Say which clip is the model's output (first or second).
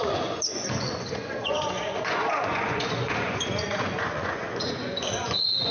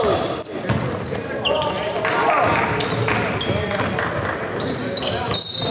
first